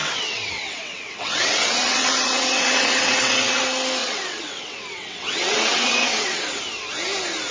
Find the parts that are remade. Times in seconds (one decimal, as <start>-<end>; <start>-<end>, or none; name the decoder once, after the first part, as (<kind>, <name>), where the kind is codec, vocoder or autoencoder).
0.0-3.6 (vocoder, WaveNeXt); 4.0-6.6